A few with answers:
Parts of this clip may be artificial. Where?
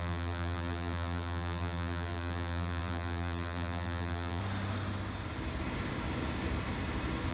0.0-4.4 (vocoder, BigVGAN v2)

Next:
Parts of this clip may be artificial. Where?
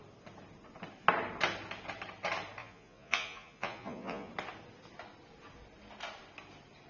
2.6-4.3 (vocoder, Vocos)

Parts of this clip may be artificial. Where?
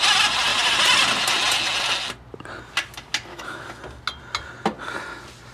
3.3-3.8 (autoencoder, DAC-VAE)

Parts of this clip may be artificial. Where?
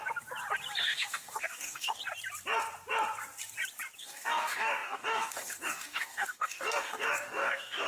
0.8-2.0 (codec, DAC); 4.0-7.9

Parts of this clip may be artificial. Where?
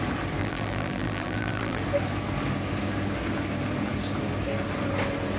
0.4-1.8 (vocoder, BigVGAN v2)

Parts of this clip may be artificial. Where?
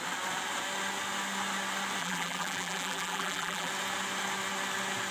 2.0-3.7 (vocoder, BigVGAN v2)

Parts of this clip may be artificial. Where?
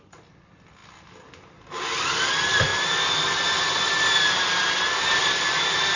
none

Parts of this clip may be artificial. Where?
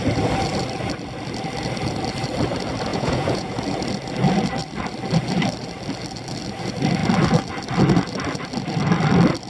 2.9-3.5 (vocoder, Vocos)